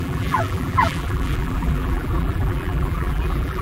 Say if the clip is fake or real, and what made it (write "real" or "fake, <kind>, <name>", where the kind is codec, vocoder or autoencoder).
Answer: fake, vocoder, BigVGAN v2